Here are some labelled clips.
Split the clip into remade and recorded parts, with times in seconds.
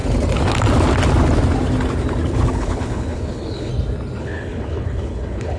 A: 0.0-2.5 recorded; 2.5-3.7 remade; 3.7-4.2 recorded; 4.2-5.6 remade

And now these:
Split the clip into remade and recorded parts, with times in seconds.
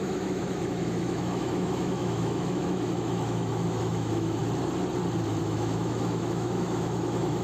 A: 0.0-4.4 remade; 4.4-5.4 recorded; 5.4-7.4 remade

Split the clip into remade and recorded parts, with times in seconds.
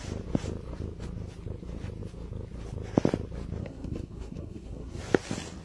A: 0.0-3.6 recorded; 3.6-5.0 remade; 5.0-5.6 recorded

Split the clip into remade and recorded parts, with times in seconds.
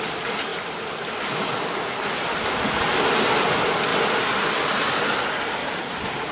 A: 0.0-0.5 recorded; 0.5-1.9 remade; 1.9-3.9 recorded; 3.9-4.7 remade; 4.7-5.6 recorded; 5.6-6.3 remade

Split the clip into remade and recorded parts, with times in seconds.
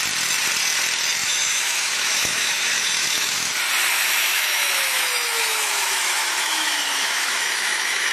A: 0.0-1.2 recorded; 1.2-3.5 remade; 3.5-3.9 recorded; 3.9-8.1 remade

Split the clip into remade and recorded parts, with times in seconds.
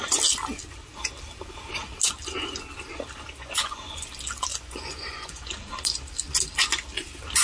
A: 0.0-3.4 recorded; 3.4-4.0 remade; 4.0-4.5 recorded; 4.5-5.5 remade; 5.5-7.4 recorded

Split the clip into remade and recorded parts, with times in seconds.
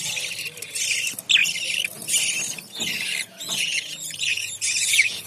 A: 0.0-3.3 recorded; 3.3-5.3 remade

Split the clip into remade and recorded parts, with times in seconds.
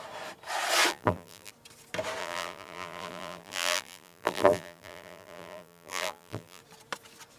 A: 0.0-0.9 recorded; 0.9-1.5 remade; 1.5-2.2 recorded; 2.2-6.6 remade; 6.6-7.4 recorded